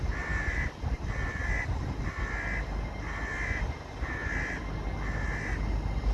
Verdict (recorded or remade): recorded